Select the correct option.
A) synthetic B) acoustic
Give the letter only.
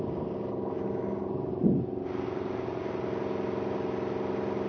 B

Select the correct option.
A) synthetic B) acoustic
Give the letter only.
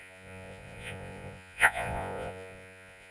A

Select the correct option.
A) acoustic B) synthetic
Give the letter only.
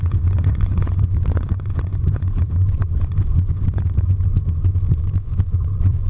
B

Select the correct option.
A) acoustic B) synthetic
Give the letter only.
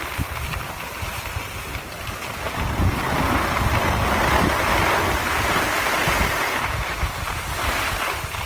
A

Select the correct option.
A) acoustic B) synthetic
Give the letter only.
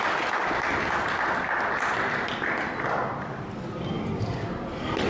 A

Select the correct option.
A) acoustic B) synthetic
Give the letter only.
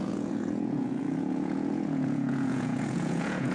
B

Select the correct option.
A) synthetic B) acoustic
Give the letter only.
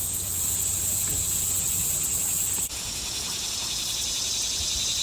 A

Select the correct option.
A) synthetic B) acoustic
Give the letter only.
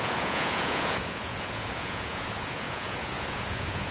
A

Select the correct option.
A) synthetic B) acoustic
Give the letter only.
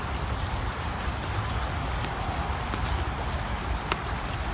B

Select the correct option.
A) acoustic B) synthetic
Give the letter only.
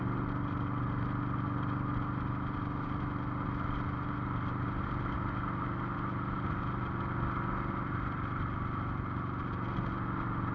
A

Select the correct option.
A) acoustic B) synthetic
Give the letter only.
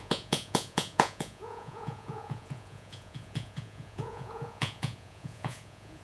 B